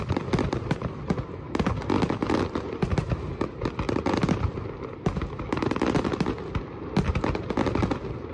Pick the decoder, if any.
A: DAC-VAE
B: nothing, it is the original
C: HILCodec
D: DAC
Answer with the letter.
B